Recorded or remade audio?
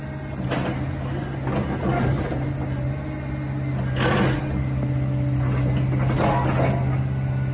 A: recorded